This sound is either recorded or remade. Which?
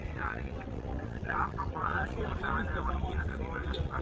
remade